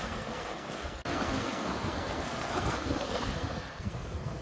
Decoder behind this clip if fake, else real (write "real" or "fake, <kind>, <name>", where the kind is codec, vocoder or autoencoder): fake, codec, SNAC